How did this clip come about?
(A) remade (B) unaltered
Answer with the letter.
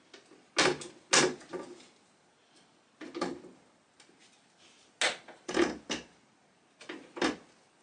B